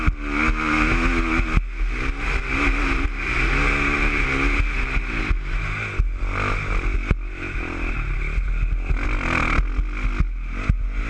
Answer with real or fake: real